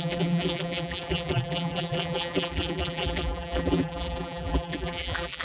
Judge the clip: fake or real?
fake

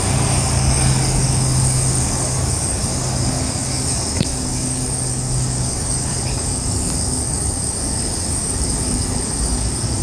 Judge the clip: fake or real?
fake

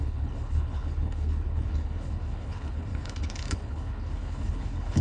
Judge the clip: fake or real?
fake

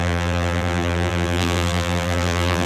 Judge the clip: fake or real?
fake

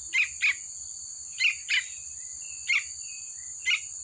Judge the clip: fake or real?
real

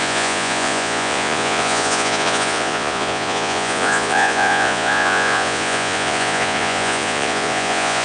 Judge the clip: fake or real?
fake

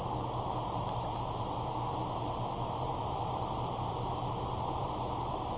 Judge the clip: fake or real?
fake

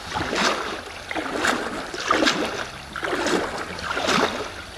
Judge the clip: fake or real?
real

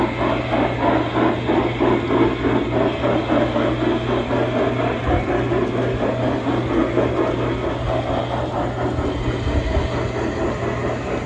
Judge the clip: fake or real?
real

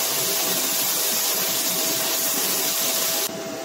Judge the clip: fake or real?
fake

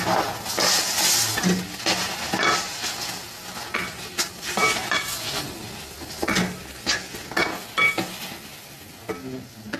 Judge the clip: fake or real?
real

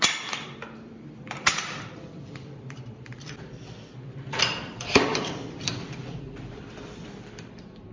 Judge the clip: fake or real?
fake